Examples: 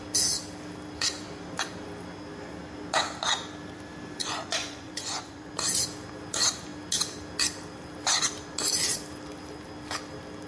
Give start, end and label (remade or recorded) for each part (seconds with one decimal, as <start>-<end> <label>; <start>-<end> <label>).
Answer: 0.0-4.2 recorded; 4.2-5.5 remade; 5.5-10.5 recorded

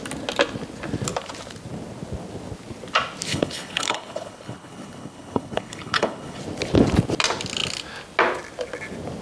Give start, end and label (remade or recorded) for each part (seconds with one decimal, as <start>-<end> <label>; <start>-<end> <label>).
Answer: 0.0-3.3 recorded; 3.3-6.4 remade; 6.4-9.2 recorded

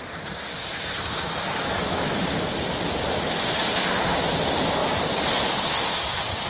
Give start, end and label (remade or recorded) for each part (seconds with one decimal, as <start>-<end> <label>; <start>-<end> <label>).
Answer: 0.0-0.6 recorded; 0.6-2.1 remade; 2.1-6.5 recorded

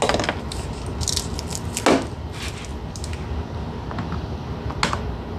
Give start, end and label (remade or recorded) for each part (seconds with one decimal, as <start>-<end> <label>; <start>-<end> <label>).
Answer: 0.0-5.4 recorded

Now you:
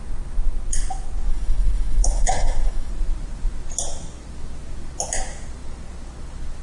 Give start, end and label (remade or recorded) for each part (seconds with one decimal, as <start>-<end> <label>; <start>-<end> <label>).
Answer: 0.0-1.3 recorded; 1.3-2.9 remade; 2.9-6.6 recorded

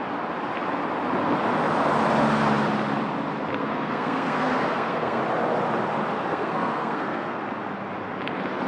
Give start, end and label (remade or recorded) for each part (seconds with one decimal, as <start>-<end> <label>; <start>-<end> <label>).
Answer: 0.0-3.5 recorded; 3.5-5.2 remade; 5.2-6.3 recorded; 6.3-7.4 remade; 7.4-8.7 recorded

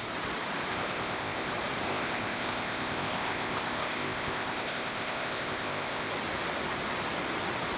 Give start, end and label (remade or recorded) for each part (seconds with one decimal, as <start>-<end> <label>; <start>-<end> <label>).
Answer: 0.0-0.7 recorded; 0.7-1.5 remade; 1.5-1.9 recorded; 1.9-6.1 remade; 6.1-7.8 recorded

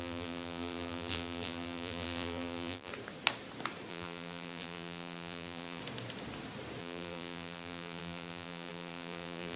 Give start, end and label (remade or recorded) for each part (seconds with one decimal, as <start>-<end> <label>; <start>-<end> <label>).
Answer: 0.0-2.9 remade; 2.9-3.9 recorded; 3.9-5.8 remade; 5.8-6.8 recorded; 6.8-9.6 remade